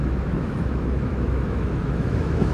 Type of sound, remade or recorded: remade